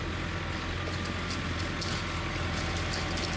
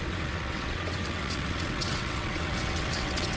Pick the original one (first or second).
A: first